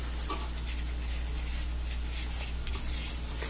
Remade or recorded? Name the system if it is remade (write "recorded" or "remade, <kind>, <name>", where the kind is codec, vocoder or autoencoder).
recorded